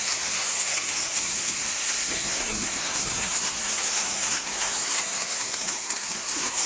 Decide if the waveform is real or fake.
fake